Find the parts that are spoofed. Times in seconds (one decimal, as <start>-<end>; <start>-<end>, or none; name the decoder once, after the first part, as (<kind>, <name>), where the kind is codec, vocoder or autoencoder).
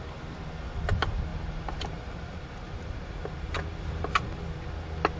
1.3-4.4 (vocoder, BigVGAN v2)